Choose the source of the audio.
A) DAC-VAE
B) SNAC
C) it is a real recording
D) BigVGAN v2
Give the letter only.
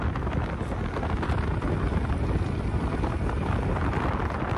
C